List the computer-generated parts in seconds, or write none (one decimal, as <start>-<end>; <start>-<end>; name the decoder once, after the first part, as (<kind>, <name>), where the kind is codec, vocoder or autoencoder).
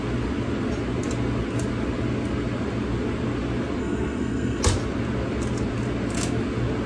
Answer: 3.8-4.6 (codec, SNAC)